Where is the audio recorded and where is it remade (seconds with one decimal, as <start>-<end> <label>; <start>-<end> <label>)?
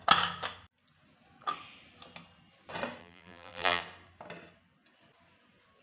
0.0-3.0 recorded; 3.0-3.8 remade; 3.8-5.8 recorded